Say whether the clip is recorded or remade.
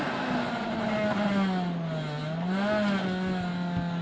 recorded